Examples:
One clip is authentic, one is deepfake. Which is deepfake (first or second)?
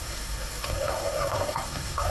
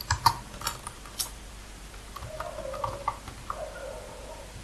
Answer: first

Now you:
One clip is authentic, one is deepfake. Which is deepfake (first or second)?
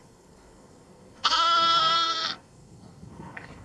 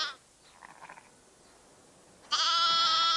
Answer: first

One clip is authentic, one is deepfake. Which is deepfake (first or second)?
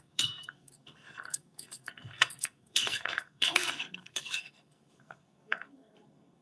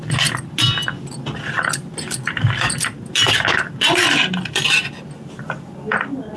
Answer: first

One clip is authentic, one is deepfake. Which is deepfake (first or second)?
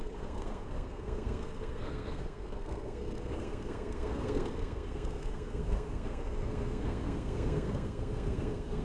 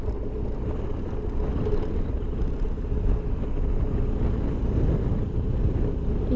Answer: first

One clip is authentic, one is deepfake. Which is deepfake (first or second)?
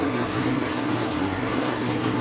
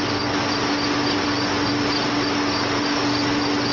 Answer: first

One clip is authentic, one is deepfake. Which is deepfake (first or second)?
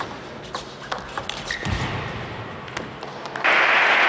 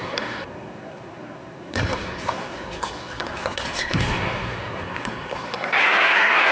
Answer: second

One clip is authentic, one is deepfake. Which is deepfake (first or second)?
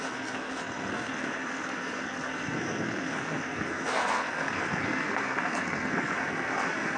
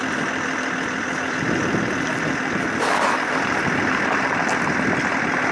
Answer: first